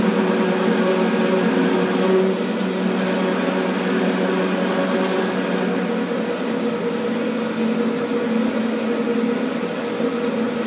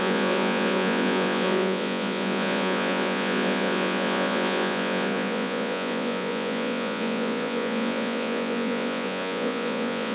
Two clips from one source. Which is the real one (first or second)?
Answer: first